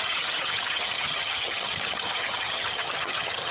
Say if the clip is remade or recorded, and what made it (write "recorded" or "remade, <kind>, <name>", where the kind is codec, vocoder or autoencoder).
remade, vocoder, HiFi-GAN